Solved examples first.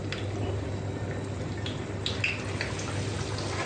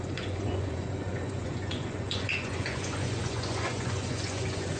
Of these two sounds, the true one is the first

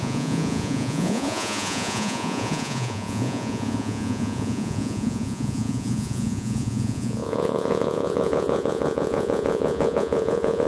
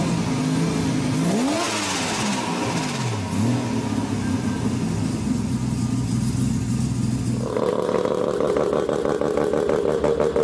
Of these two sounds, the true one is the second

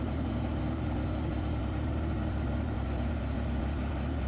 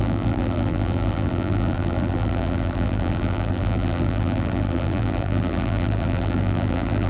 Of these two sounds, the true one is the first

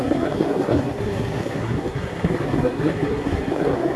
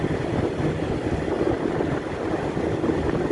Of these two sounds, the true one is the second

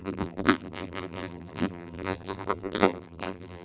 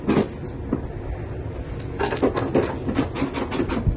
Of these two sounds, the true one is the second